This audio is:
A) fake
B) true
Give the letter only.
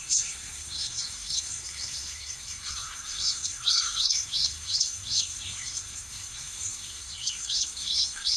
A